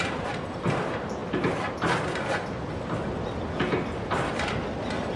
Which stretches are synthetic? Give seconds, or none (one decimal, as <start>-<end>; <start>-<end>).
none